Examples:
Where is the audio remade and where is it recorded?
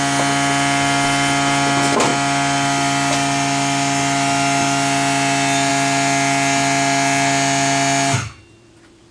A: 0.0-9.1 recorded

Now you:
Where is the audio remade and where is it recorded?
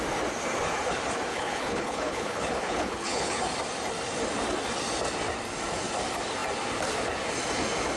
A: 0.0-1.3 recorded; 1.3-3.4 remade; 3.4-8.0 recorded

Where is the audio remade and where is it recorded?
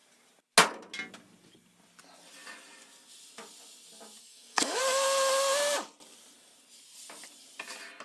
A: 0.0-4.2 recorded; 4.2-4.8 remade; 4.8-8.0 recorded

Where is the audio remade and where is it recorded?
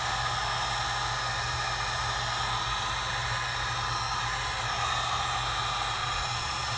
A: 0.0-6.0 recorded; 6.0-6.8 remade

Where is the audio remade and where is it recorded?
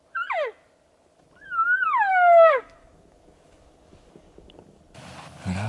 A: 0.0-2.1 recorded; 2.1-4.8 remade; 4.8-5.7 recorded